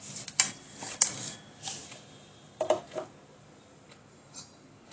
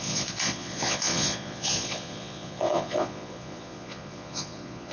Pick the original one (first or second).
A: first